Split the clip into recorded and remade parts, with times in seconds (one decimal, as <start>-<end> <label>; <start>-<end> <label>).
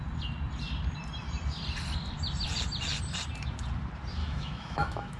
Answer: 0.0-4.2 recorded; 4.2-5.2 remade